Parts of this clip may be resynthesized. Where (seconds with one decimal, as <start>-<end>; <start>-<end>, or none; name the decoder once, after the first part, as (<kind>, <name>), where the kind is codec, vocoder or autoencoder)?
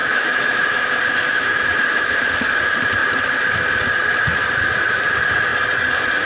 0.0-2.6 (autoencoder, DAC-VAE)